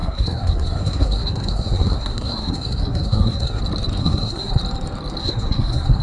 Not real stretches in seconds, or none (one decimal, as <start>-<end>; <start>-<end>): 0.0-3.6; 4.0-4.6; 5.2-6.0